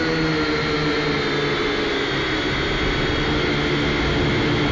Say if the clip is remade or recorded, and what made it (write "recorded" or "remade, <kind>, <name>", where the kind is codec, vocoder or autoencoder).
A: recorded